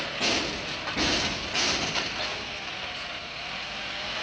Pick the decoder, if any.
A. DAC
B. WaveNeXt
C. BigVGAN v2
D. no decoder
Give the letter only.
D